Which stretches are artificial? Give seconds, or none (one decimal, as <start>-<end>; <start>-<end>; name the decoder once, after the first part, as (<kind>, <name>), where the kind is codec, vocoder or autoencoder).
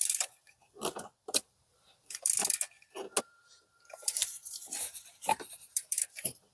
0.0-0.6 (vocoder, BigVGAN v2); 1.2-2.4; 3.2-6.5